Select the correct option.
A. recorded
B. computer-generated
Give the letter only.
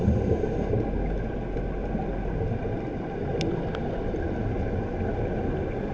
A